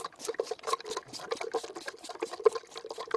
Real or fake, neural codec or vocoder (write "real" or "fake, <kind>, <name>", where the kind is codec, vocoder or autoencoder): real